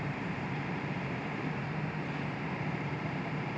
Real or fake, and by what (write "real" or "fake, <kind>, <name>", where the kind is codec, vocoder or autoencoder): fake, vocoder, BigVGAN v2